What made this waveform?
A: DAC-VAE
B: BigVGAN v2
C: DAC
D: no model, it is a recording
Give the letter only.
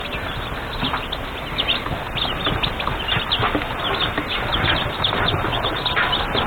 D